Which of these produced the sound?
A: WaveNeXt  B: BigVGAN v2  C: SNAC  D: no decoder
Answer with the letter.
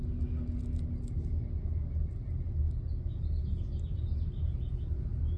D